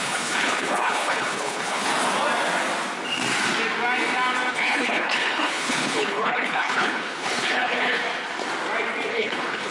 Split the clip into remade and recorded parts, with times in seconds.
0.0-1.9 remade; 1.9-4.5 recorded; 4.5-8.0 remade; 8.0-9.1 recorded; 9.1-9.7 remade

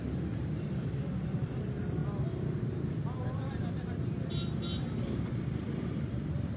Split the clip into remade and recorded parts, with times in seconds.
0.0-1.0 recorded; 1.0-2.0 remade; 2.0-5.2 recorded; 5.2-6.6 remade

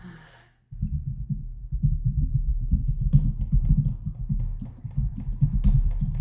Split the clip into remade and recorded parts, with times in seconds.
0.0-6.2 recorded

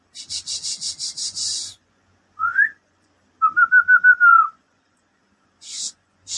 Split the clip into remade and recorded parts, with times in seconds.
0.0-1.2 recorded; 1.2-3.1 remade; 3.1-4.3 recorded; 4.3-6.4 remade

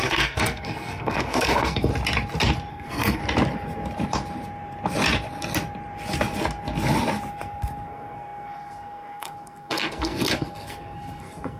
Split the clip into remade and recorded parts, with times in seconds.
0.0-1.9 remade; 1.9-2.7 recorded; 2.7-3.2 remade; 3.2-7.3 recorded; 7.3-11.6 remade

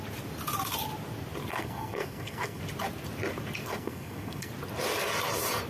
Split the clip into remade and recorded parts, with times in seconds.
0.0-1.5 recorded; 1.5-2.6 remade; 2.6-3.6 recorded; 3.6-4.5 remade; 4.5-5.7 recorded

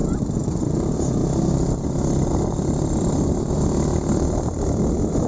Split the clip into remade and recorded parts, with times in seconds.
0.0-0.7 remade; 0.7-3.9 recorded; 3.9-4.4 remade; 4.4-5.3 recorded

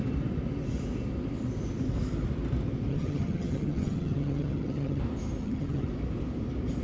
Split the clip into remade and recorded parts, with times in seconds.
0.0-2.9 recorded; 2.9-5.0 remade; 5.0-5.4 recorded; 5.4-5.9 remade; 5.9-6.8 recorded